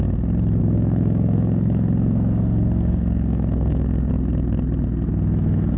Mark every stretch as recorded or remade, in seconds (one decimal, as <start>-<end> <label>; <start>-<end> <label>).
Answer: 0.0-0.6 recorded; 0.6-4.1 remade; 4.1-5.8 recorded

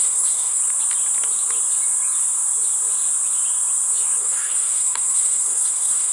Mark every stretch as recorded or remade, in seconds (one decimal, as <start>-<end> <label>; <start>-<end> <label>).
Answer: 0.0-0.6 remade; 0.6-4.2 recorded; 4.2-6.1 remade

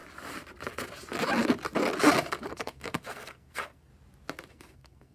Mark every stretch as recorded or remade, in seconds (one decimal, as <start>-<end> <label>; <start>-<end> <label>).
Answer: 0.0-2.5 recorded; 2.5-3.9 remade; 3.9-4.5 recorded; 4.5-5.1 remade

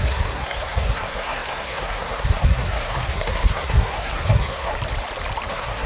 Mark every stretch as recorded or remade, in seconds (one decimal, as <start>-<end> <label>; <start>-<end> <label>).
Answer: 0.0-4.7 remade; 4.7-5.5 recorded; 5.5-5.9 remade

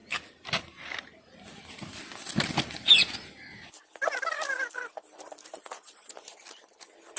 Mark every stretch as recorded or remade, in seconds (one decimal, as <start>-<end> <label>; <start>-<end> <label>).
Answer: 0.0-7.2 recorded

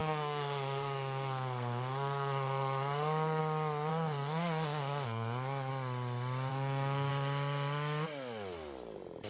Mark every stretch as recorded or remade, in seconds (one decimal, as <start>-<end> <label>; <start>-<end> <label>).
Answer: 0.0-3.4 remade; 3.4-3.9 recorded; 3.9-5.7 remade; 5.7-6.5 recorded; 6.5-7.1 remade; 7.1-9.3 recorded

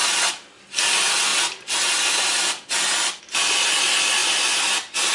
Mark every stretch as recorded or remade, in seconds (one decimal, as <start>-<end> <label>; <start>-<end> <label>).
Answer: 0.0-5.1 recorded

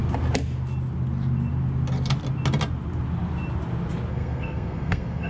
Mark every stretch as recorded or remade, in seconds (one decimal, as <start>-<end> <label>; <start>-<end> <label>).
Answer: 0.0-4.1 recorded; 4.1-5.3 remade